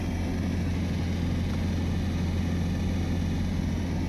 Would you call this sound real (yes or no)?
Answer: yes